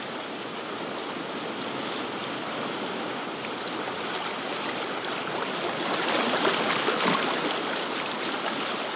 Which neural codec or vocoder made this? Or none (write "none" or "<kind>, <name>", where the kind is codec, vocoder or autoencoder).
none